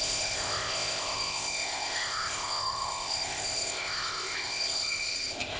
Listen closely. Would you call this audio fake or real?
fake